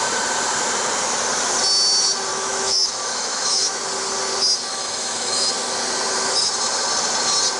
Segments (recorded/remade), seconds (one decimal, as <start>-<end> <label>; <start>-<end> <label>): 0.0-2.3 recorded; 2.3-3.8 remade; 3.8-4.7 recorded; 4.7-5.5 remade; 5.5-7.6 recorded